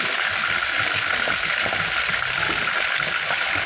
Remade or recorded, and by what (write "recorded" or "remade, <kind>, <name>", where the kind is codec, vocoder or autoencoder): recorded